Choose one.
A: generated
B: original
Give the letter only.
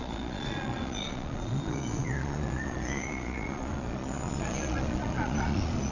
A